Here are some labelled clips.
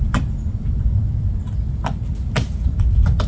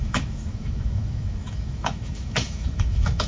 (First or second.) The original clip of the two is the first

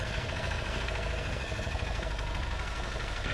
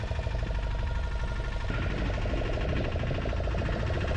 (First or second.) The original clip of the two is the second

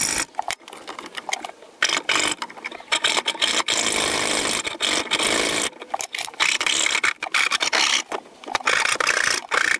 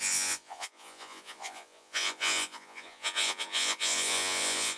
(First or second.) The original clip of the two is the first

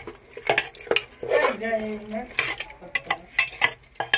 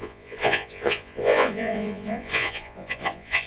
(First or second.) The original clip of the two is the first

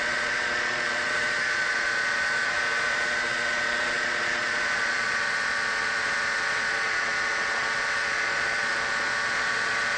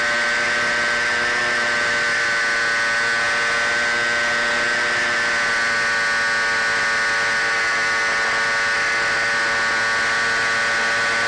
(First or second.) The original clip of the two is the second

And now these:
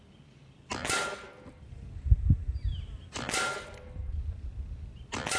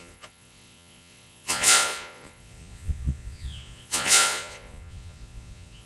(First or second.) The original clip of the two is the first